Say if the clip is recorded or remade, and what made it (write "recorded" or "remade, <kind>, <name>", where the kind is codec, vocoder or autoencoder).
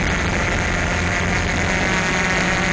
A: recorded